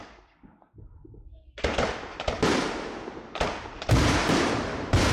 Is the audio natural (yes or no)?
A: no